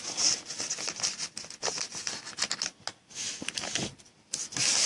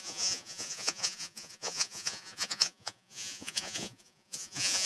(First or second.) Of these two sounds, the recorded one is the first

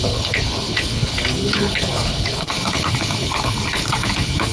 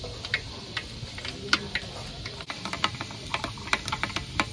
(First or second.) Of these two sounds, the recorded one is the second